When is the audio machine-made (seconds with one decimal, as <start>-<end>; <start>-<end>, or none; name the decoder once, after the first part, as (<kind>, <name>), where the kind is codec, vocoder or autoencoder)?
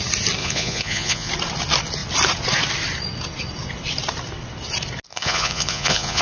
0.4-1.3 (vocoder, Vocos); 5.1-6.2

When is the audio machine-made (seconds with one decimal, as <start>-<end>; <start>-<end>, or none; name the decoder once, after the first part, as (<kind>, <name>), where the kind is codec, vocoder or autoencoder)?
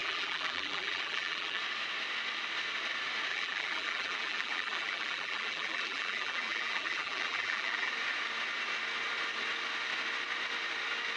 0.0-1.6 (vocoder, BigVGAN v2); 3.3-7.9